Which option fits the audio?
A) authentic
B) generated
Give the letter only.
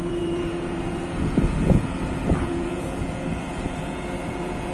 B